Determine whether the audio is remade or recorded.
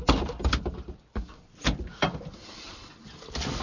recorded